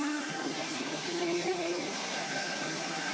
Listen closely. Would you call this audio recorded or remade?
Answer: remade